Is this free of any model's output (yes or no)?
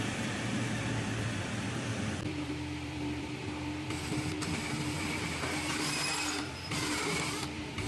no